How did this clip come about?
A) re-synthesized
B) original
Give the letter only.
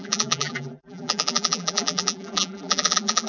A